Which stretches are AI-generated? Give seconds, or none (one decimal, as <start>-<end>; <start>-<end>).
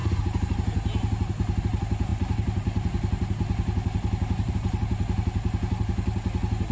none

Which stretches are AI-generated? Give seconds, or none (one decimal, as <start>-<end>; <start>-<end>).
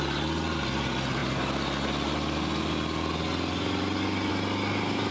none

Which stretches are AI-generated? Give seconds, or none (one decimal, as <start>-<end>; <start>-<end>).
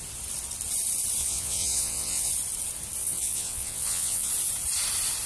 1.2-2.3; 3.0-4.3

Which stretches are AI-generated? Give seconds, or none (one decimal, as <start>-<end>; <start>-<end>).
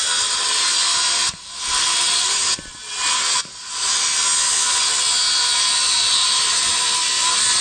none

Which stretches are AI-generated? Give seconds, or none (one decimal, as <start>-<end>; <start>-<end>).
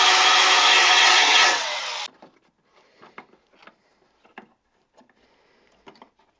0.8-1.8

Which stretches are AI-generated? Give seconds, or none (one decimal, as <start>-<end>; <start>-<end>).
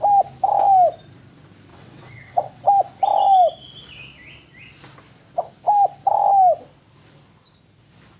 1.7-2.7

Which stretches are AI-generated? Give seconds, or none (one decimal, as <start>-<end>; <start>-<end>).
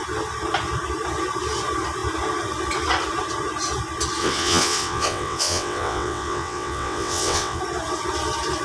4.2-7.6